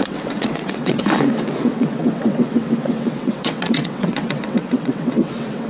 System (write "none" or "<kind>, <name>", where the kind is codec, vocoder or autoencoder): vocoder, WaveNeXt